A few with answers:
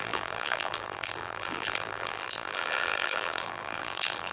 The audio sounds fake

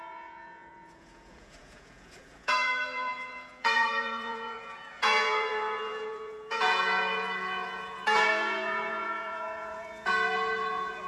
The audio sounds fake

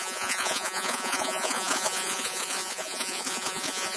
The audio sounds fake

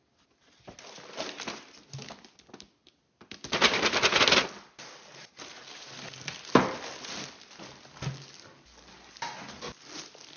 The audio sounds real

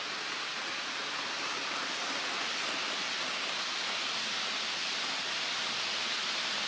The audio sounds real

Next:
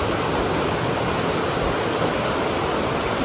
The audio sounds real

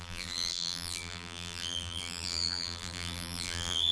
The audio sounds fake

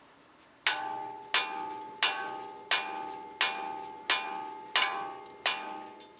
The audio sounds real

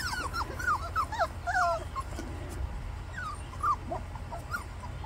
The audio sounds real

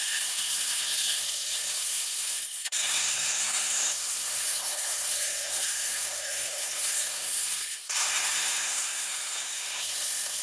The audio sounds fake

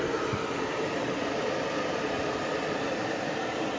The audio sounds real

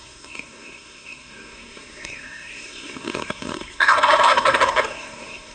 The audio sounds fake